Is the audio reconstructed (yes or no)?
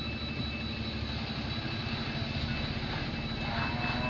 no